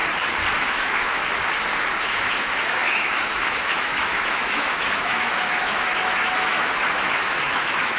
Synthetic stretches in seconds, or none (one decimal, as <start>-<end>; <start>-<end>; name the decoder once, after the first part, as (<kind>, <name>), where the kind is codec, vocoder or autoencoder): 0.6-1.2 (autoencoder, DAC-VAE); 2.0-8.0